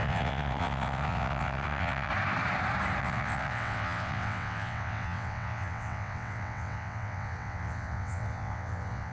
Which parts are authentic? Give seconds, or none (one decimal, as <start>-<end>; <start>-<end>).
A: 2.1-3.0